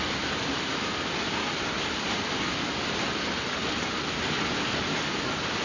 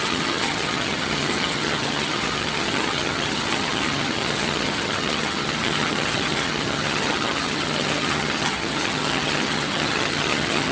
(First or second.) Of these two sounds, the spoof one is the second